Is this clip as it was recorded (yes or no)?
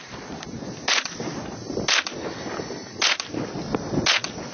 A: yes